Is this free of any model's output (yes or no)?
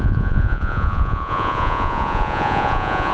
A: no